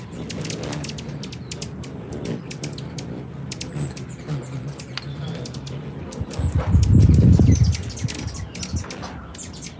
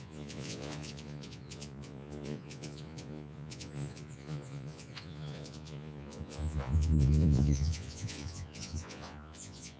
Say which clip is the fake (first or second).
second